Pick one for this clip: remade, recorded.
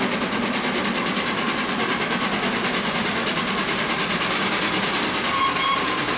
recorded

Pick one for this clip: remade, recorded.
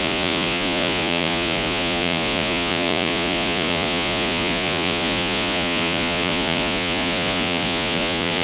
remade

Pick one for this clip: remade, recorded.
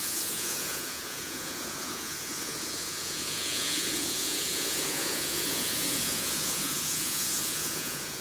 remade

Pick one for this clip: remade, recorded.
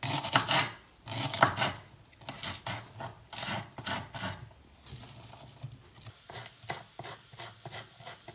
recorded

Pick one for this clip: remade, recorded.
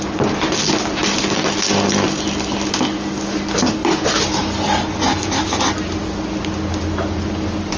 recorded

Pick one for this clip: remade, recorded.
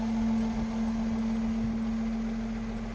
recorded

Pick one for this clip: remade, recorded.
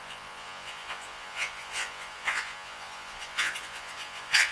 remade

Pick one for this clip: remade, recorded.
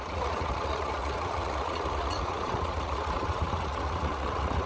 remade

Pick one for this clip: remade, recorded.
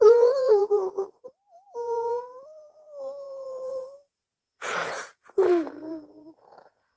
remade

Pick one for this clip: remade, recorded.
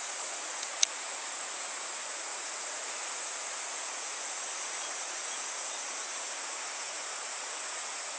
remade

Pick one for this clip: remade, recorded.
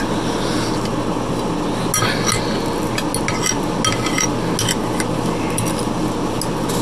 recorded